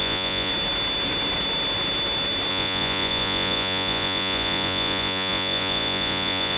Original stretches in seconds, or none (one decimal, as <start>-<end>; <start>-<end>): 0.5-2.5